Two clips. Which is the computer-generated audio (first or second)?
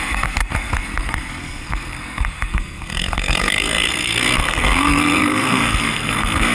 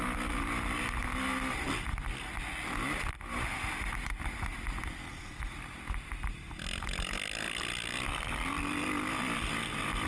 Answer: first